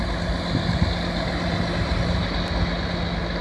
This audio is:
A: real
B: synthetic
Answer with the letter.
A